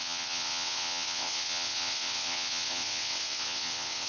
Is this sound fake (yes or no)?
yes